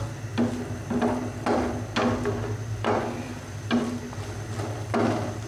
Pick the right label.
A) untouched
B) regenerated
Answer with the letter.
A